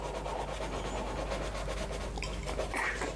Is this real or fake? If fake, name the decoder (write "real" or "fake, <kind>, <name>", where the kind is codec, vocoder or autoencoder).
real